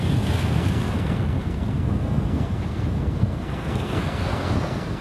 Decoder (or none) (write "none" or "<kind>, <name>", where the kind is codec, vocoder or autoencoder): codec, SNAC